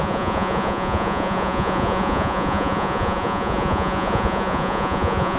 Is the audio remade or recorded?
remade